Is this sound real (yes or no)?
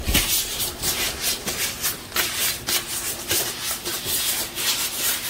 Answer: yes